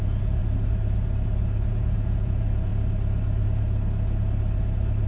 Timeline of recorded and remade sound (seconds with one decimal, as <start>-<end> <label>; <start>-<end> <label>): 0.0-0.4 remade; 0.4-1.7 recorded; 1.7-2.7 remade; 2.7-5.1 recorded